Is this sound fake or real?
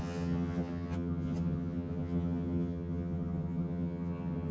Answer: fake